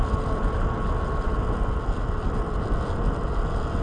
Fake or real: real